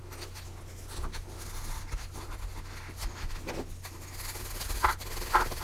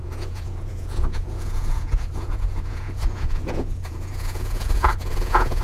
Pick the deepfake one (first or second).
second